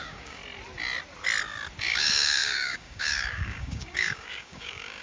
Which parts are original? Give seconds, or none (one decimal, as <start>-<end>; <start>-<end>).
0.4-1.8